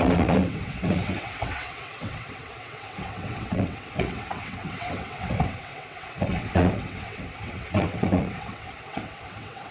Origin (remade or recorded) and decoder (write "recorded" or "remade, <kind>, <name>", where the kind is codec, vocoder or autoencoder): remade, vocoder, WaveNeXt